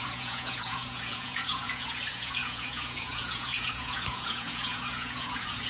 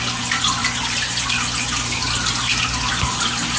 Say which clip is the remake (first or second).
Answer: first